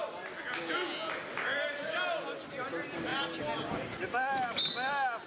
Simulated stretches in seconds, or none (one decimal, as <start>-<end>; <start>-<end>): none